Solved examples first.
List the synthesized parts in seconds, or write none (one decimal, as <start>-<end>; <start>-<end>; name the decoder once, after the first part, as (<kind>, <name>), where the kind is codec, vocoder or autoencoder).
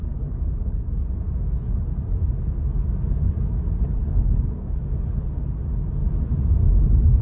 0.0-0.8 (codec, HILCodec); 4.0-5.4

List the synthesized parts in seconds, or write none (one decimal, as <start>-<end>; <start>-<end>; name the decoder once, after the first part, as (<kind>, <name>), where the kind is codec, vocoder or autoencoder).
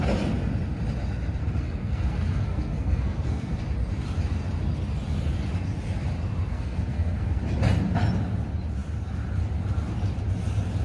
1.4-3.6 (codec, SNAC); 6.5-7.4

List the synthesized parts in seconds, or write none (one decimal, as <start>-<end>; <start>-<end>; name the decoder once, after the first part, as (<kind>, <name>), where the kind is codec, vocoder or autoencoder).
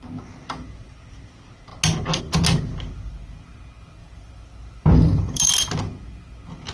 4.0-5.5 (vocoder, BigVGAN v2)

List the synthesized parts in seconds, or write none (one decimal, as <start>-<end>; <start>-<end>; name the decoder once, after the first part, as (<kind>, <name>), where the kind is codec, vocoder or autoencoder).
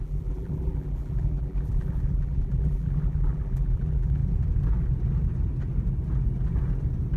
0.0-4.2 (vocoder, BigVGAN v2)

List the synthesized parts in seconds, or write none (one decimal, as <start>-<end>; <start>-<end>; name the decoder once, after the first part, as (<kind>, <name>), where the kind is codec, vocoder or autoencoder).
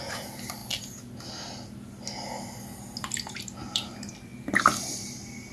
0.0-0.6 (vocoder, BigVGAN v2); 2.6-5.5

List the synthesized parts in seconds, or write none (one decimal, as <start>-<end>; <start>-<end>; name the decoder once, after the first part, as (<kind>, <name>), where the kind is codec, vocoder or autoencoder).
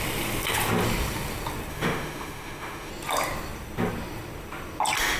1.7-2.9 (autoencoder, DAC-VAE)